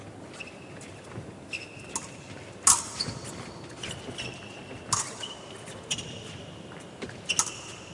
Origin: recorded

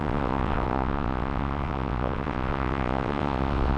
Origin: remade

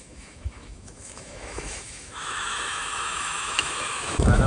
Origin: remade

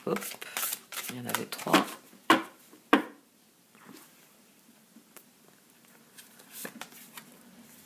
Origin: remade